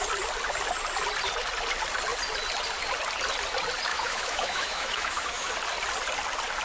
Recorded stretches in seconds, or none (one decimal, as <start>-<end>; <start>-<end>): 0.0-3.9; 5.5-6.6